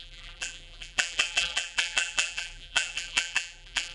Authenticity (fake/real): fake